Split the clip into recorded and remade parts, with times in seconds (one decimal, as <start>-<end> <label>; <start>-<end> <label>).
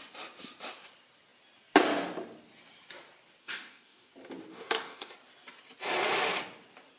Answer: 0.0-3.4 recorded; 3.4-4.1 remade; 4.1-4.5 recorded; 4.5-5.1 remade; 5.1-7.0 recorded